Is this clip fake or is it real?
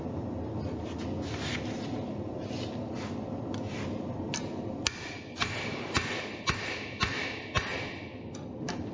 real